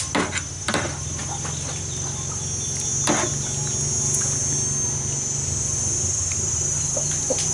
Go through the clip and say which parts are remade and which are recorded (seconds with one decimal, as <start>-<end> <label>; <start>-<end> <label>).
0.0-7.5 recorded